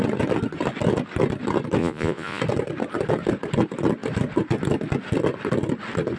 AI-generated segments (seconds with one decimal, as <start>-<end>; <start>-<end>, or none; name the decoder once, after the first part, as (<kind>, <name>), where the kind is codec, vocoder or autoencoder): 1.8-2.4 (vocoder, Vocos)